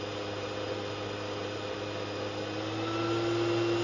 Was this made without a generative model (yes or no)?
yes